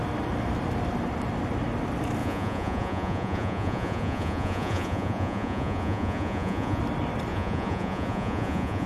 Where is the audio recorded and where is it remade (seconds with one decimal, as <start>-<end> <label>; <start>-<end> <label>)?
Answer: 0.0-2.2 recorded; 2.2-6.8 remade; 6.8-7.3 recorded; 7.3-8.9 remade